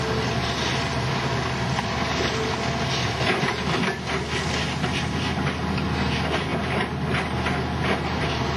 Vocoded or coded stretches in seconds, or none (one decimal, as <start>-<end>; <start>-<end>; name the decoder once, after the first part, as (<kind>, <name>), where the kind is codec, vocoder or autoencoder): none